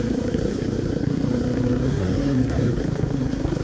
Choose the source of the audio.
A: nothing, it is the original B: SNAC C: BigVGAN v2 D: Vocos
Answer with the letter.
B